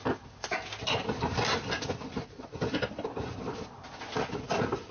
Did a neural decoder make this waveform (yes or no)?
no